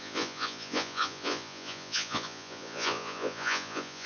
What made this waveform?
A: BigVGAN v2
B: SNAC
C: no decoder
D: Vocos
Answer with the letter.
D